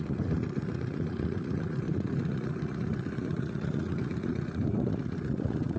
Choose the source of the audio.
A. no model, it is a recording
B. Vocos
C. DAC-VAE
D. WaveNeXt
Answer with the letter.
B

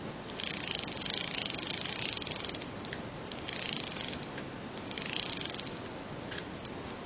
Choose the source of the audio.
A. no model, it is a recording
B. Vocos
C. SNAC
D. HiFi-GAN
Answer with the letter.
A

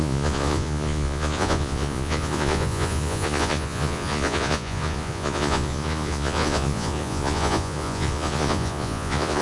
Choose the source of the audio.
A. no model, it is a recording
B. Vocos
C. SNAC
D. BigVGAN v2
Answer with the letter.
B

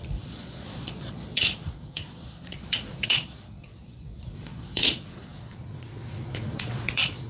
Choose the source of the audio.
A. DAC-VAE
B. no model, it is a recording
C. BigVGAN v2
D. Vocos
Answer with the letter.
D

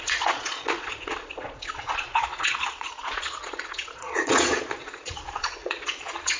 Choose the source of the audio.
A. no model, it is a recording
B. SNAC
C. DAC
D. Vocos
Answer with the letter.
D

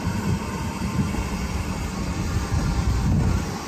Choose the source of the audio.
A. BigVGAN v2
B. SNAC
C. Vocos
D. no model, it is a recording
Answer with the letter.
D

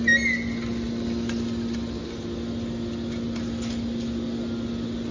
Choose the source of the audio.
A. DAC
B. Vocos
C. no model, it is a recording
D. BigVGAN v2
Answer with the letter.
C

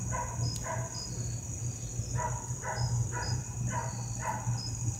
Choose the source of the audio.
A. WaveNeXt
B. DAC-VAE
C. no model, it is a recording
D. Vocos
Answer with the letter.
C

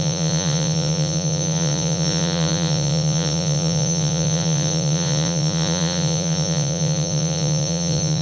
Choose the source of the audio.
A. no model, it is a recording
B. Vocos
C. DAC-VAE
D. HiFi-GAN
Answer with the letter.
B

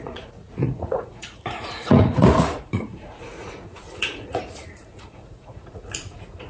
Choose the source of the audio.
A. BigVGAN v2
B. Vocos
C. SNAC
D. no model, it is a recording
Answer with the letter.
B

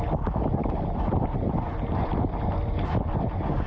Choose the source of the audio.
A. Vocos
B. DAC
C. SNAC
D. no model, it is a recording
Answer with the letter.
D